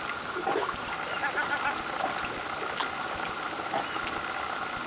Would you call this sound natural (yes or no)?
yes